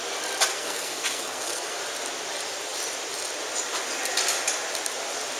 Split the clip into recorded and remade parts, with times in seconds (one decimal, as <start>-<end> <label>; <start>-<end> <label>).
0.0-0.5 recorded; 0.5-1.8 remade; 1.8-5.4 recorded